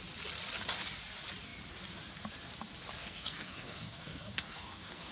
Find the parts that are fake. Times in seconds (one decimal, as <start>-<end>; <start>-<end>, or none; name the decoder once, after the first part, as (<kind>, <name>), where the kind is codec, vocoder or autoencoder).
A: 3.0-5.1 (codec, SNAC)